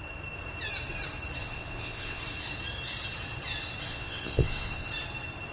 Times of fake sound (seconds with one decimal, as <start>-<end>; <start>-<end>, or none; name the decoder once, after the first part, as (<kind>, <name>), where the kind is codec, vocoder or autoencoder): 1.4-2.2 (vocoder, WaveNeXt); 3.9-4.9